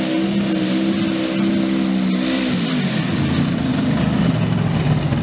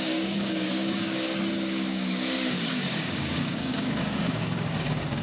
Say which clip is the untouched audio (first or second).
first